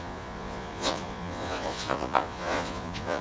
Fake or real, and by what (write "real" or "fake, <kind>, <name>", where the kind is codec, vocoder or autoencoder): fake, vocoder, Vocos